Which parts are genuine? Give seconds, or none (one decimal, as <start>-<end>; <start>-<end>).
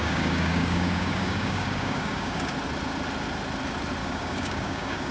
2.5-4.0